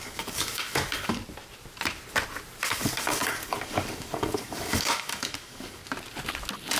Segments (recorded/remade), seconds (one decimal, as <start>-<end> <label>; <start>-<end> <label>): 0.0-1.2 remade; 1.2-2.6 recorded; 2.6-5.8 remade; 5.8-6.8 recorded